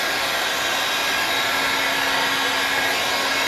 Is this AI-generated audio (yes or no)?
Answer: no